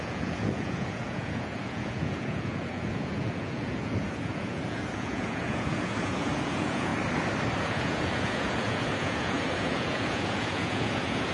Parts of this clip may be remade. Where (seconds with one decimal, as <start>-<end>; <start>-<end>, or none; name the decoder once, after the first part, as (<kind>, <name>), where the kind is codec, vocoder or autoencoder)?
0.0-6.9 (vocoder, Vocos); 7.6-11.3